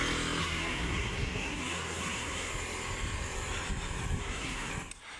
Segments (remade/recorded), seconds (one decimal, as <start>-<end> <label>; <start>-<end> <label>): 0.0-0.4 recorded; 0.4-2.5 remade; 2.5-4.2 recorded; 4.2-4.7 remade; 4.7-5.2 recorded